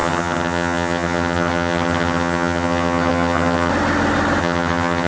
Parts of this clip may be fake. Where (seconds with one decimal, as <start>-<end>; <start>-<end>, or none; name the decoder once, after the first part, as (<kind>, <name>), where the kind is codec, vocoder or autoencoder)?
0.0-3.7 (vocoder, HiFi-GAN); 4.4-5.1